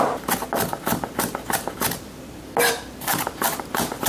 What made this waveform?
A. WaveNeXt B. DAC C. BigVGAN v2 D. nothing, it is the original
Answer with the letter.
D